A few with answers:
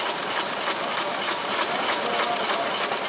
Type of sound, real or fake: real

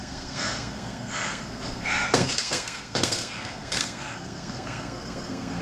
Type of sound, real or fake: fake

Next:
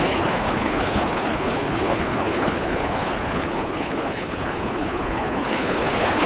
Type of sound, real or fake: fake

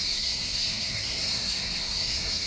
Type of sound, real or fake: fake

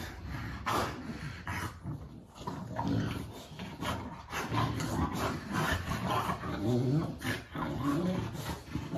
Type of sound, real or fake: real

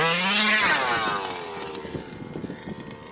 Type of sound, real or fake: real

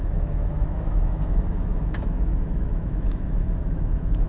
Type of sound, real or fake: fake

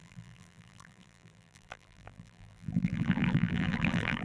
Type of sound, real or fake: fake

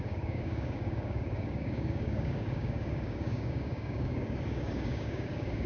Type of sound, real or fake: fake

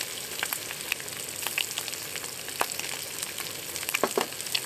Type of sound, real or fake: real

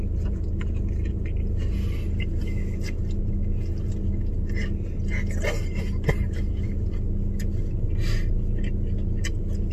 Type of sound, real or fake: real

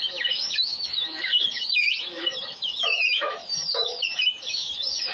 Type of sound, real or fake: fake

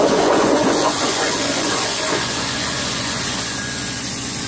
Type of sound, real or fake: fake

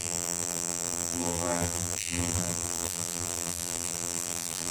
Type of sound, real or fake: fake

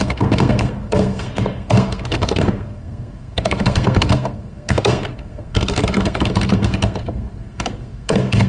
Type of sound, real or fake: fake